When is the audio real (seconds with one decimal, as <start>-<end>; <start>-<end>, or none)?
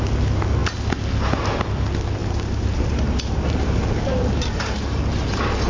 0.0-2.2; 5.0-5.7